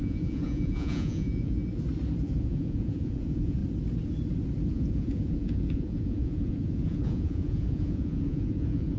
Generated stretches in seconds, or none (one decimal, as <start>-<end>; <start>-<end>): 0.0-1.6; 2.2-3.6; 4.7-9.0